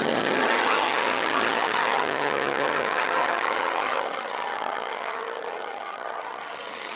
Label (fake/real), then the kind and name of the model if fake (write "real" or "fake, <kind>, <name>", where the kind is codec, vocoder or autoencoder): fake, vocoder, HiFi-GAN